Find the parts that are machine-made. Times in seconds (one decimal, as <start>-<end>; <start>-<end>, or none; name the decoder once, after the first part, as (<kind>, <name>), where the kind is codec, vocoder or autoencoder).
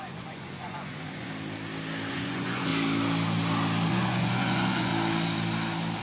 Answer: 0.0-1.3 (vocoder, Vocos); 2.1-2.7; 3.9-4.9